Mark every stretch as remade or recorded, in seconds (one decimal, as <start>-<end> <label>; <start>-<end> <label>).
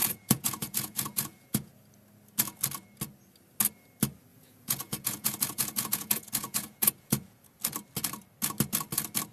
0.0-1.7 remade; 1.7-4.3 recorded; 4.3-7.6 remade; 7.6-9.3 recorded